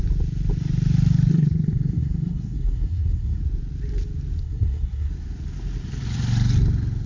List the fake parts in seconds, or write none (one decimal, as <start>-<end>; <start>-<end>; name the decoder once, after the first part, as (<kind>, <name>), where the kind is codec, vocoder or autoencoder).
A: 1.3-3.4 (codec, SNAC); 4.4-5.1